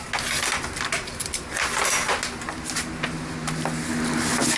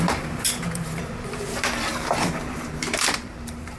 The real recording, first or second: first